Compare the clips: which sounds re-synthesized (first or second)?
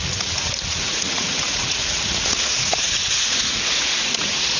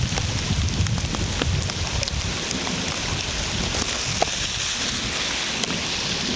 first